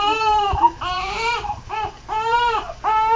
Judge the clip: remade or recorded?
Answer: remade